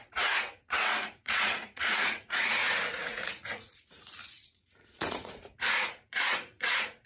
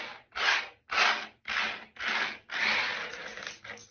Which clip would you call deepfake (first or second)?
first